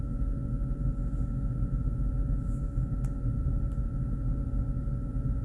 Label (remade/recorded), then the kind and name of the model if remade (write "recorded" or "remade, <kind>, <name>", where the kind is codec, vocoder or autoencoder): recorded